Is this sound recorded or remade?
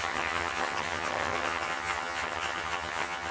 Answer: remade